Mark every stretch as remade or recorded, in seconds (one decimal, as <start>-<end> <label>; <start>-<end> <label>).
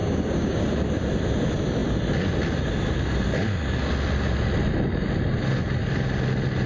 0.0-0.9 remade; 0.9-6.7 recorded